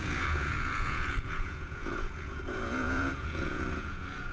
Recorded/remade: remade